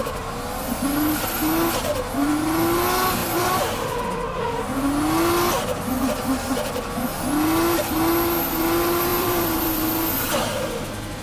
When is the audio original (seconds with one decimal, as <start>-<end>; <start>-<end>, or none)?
0.0-3.2; 4.0-9.1; 9.8-11.2